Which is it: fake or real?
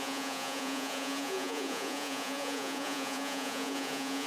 fake